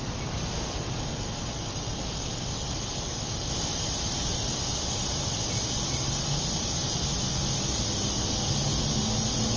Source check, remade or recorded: recorded